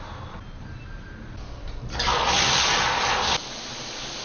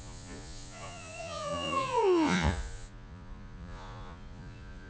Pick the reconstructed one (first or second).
second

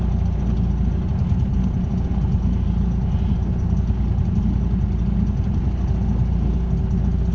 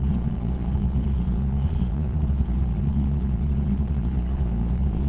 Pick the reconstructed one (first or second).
second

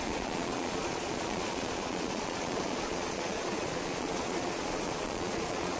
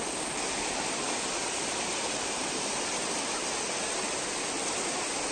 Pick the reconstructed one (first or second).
first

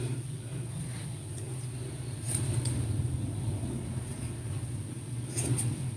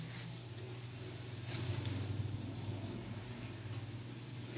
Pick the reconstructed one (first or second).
first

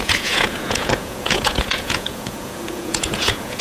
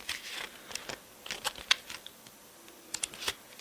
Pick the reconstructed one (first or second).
first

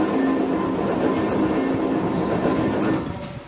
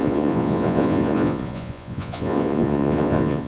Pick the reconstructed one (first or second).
second